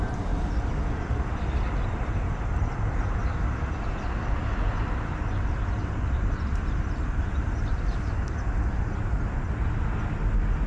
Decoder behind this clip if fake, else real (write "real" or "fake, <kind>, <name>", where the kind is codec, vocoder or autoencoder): real